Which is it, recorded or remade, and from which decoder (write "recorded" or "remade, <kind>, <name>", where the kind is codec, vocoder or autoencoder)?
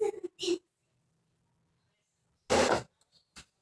recorded